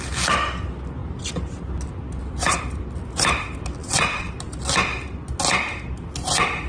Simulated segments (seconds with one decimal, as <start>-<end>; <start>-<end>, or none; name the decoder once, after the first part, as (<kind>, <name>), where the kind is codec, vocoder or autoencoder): 3.8-4.3 (vocoder, Vocos)